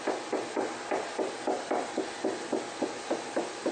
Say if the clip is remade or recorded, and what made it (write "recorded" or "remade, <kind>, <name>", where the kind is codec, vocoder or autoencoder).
recorded